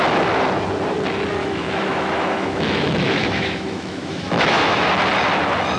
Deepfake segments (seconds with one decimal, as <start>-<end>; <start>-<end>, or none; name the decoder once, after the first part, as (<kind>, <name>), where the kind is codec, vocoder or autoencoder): 1.4-4.9 (autoencoder, DAC-VAE)